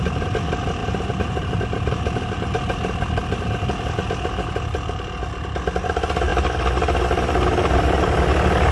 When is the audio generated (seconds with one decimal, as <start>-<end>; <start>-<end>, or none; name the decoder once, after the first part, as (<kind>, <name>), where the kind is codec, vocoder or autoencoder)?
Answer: none